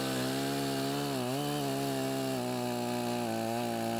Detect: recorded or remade recorded